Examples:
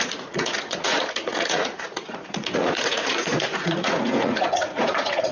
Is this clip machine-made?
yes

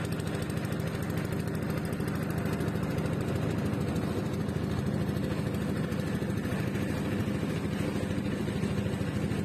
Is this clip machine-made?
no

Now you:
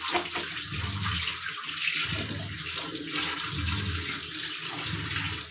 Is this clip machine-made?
no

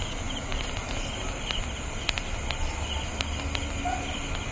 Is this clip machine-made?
no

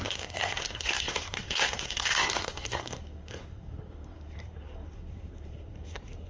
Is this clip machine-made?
yes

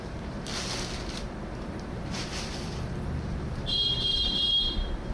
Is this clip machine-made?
yes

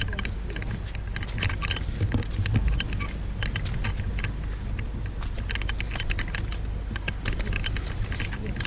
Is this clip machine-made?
no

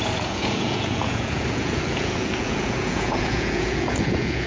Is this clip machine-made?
yes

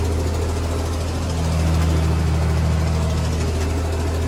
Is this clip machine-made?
no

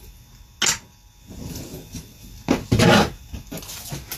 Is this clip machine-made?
no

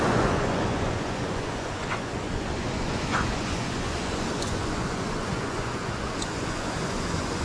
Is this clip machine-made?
yes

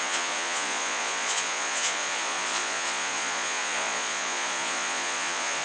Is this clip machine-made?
yes